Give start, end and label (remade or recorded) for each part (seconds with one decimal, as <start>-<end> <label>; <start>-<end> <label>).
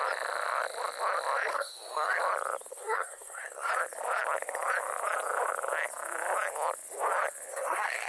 0.0-1.5 recorded; 1.5-2.2 remade; 2.2-2.7 recorded; 2.7-3.7 remade; 3.7-7.5 recorded; 7.5-8.1 remade